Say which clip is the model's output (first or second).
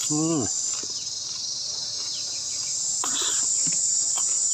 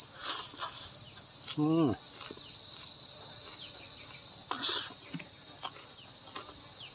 first